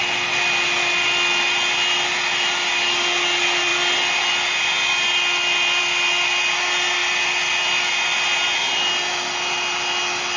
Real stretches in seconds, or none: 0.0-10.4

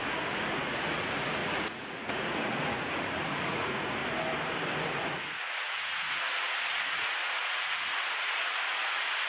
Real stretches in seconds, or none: 4.0-4.9

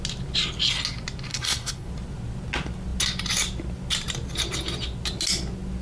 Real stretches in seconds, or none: 0.0-1.3; 1.9-5.8